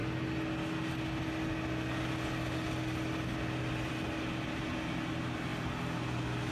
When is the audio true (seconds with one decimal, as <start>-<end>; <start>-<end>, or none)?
0.0-6.5